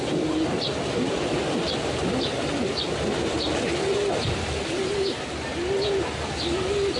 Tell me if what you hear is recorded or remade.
recorded